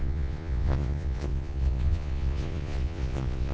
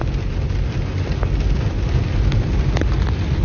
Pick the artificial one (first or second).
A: first